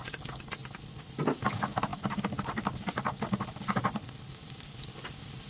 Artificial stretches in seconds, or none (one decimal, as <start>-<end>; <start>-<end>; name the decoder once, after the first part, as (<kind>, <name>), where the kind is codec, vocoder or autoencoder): 0.6-1.4 (vocoder, BigVGAN v2); 1.9-5.5